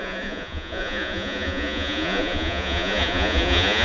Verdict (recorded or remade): remade